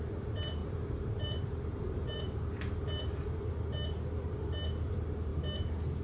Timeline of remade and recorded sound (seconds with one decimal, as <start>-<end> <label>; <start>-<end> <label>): 0.0-0.6 recorded; 0.6-3.4 remade; 3.4-6.0 recorded

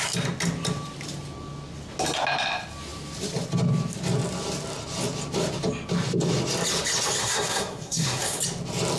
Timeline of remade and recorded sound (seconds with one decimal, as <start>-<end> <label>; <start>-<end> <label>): 0.0-7.2 recorded; 7.2-8.4 remade; 8.4-9.0 recorded

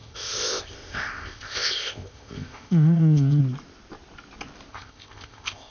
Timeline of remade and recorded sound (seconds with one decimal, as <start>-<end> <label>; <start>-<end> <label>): 0.0-3.4 remade; 3.4-4.7 recorded; 4.7-5.7 remade

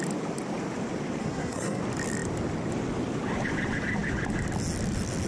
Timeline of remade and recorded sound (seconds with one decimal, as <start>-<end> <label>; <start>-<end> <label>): 0.0-1.2 recorded; 1.2-1.8 remade; 1.8-5.3 recorded

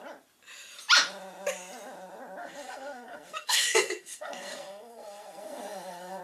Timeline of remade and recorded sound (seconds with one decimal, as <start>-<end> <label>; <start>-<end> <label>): 0.0-2.4 recorded; 2.4-6.2 remade

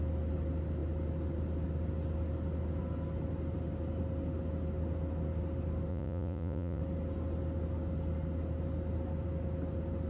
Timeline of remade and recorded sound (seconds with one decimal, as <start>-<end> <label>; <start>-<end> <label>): 0.0-5.9 recorded; 5.9-6.8 remade; 6.8-10.1 recorded

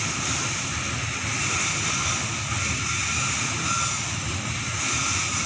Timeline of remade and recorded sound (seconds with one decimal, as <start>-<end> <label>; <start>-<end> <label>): 0.0-5.5 recorded

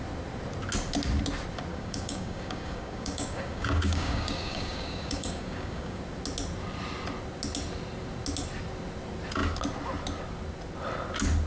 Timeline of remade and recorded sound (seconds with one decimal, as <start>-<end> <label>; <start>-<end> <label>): 0.0-1.7 recorded; 1.7-6.0 remade; 6.0-11.5 recorded